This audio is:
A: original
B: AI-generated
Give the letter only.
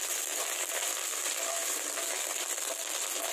B